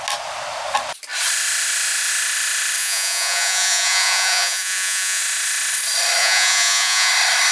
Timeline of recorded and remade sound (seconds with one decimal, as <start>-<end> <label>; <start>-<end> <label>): 0.0-2.8 recorded; 2.8-5.2 remade; 5.2-6.2 recorded; 6.2-7.1 remade; 7.1-7.5 recorded